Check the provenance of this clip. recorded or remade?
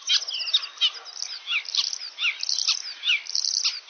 recorded